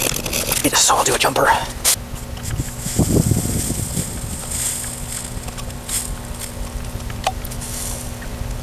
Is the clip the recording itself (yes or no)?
yes